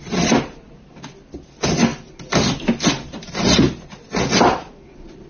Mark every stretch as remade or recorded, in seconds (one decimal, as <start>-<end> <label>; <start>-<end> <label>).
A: 0.0-5.3 recorded